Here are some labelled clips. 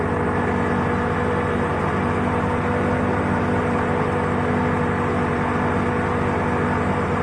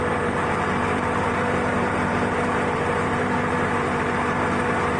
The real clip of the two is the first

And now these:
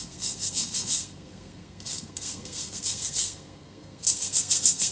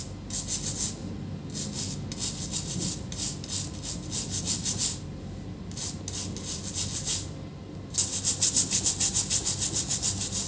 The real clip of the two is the second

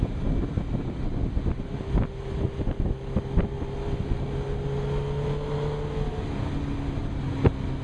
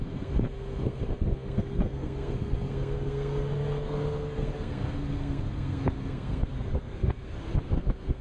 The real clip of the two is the first